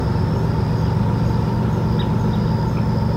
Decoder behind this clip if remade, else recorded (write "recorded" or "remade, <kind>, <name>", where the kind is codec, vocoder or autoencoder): recorded